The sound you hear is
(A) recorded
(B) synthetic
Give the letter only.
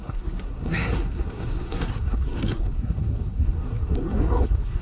B